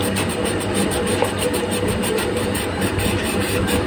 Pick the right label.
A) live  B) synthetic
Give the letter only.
A